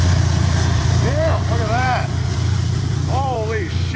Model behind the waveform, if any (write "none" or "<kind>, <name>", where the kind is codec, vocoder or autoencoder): vocoder, BigVGAN v2